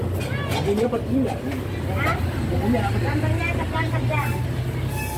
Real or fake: real